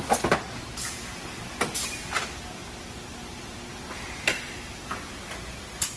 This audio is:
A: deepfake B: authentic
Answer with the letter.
B